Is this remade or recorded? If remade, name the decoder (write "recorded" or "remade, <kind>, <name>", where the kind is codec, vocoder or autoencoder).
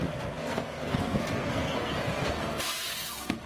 remade, codec, SNAC